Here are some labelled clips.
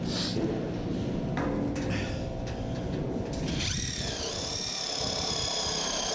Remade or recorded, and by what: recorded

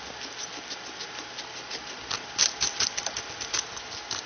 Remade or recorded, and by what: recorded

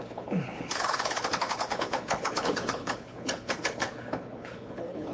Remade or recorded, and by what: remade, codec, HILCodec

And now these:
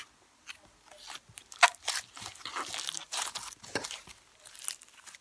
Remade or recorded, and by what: recorded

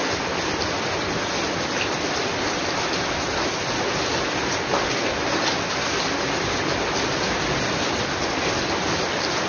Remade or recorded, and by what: recorded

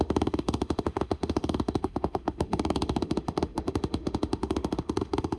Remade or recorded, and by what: remade, autoencoder, DAC-VAE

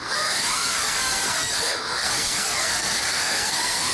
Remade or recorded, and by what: remade, codec, SNAC